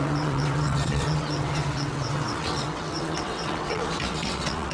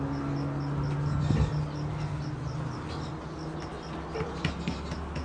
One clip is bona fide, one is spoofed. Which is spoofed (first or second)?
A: first